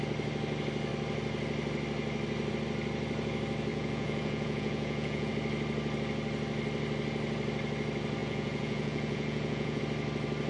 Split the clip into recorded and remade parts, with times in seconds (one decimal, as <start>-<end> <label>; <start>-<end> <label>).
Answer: 0.0-3.7 recorded; 3.7-5.3 remade; 5.3-8.2 recorded; 8.2-9.8 remade; 9.8-10.5 recorded